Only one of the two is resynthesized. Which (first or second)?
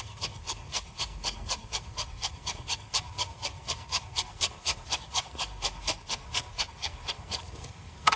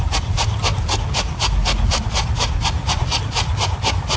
first